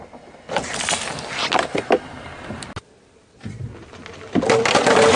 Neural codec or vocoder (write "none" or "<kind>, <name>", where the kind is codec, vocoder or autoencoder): none